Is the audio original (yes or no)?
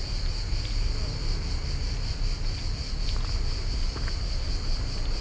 yes